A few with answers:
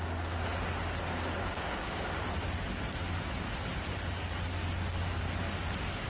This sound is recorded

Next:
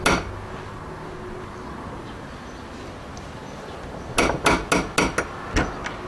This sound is recorded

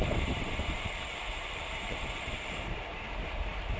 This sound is remade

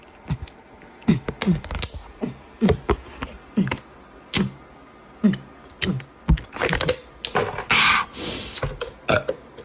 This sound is recorded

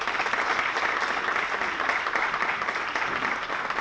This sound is recorded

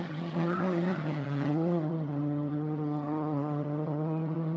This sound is remade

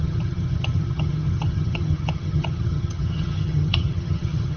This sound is remade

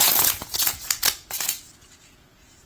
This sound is remade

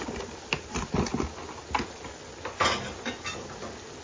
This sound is recorded